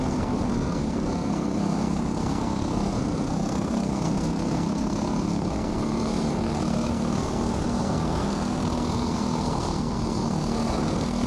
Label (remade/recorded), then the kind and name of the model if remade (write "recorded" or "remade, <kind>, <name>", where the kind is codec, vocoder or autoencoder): remade, codec, SNAC